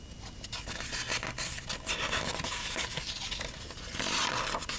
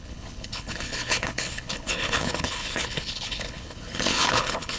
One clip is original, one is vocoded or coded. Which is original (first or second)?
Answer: first